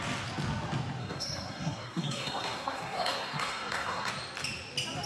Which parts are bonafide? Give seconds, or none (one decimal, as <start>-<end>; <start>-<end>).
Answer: 0.0-1.0; 4.1-5.1